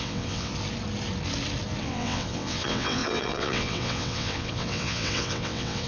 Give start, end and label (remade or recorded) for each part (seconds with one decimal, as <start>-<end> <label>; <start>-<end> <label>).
0.0-0.5 remade; 0.5-1.8 recorded; 1.8-5.9 remade